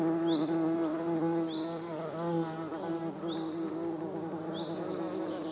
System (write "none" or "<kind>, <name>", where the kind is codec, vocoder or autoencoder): none